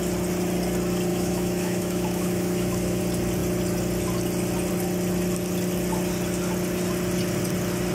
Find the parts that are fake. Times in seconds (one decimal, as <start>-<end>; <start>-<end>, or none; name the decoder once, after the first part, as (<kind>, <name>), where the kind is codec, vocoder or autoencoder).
1.1-3.0 (autoencoder, DAC-VAE)